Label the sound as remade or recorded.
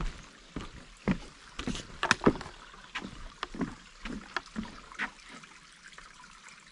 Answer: recorded